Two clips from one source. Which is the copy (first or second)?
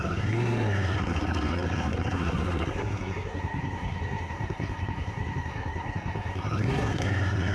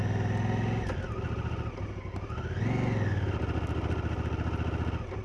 first